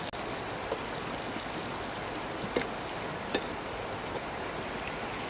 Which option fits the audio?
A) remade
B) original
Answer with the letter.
B